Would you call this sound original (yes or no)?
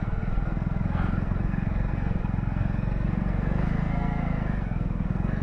no